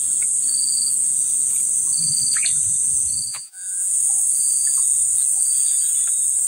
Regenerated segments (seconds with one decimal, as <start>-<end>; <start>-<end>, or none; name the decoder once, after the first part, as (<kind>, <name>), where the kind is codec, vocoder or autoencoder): 3.3-3.9 (vocoder, Vocos)